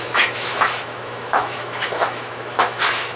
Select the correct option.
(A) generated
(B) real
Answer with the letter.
A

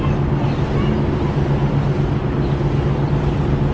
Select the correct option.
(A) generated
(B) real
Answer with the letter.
B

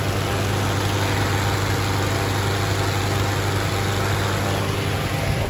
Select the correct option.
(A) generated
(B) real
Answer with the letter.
B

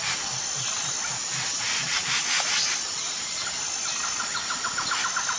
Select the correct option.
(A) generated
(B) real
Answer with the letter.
B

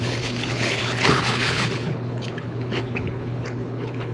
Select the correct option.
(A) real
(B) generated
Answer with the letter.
B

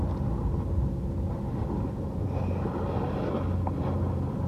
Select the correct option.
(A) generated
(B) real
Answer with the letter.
B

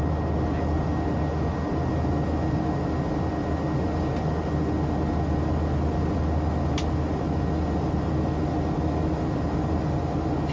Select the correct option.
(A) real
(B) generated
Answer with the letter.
A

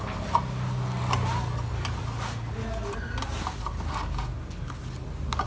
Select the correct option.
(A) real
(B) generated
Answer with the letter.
A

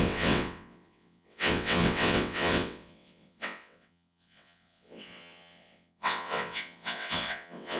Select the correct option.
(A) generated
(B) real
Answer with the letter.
A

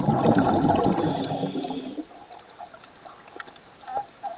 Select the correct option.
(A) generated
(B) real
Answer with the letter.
B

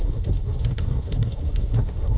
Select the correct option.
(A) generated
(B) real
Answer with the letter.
A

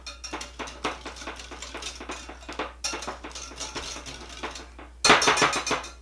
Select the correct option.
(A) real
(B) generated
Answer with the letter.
A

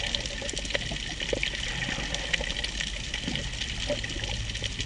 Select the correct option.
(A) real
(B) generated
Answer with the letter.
A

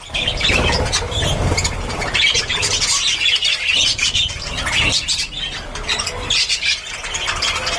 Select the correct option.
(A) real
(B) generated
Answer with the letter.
A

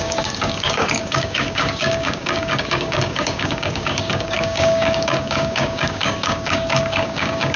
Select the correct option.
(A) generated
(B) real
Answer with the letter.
A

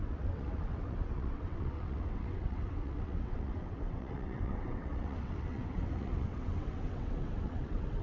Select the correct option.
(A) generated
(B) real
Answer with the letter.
A